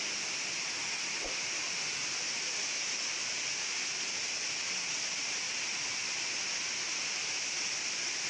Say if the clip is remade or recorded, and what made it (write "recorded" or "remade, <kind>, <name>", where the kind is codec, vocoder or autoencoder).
recorded